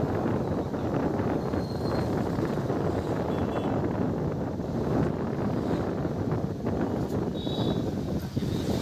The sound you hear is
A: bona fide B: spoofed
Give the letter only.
A